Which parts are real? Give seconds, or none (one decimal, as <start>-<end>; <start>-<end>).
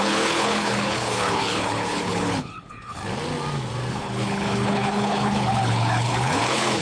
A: 3.0-3.9